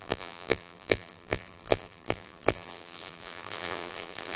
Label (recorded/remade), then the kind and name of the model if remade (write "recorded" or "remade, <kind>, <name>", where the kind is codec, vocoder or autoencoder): remade, vocoder, BigVGAN v2